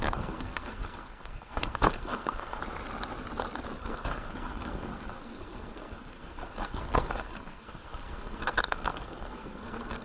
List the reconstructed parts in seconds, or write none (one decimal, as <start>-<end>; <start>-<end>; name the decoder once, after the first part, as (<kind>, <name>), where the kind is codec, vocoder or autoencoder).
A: 0.0-2.6 (codec, SNAC); 3.8-10.0